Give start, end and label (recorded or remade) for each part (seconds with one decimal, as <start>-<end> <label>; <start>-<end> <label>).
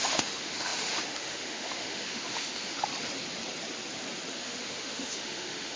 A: 0.0-2.9 remade; 2.9-4.3 recorded; 4.3-5.8 remade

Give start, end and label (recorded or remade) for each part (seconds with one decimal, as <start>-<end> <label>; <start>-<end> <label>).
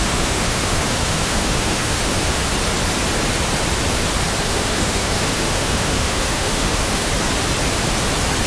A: 0.0-2.4 remade; 2.4-4.4 recorded; 4.4-7.1 remade; 7.1-8.5 recorded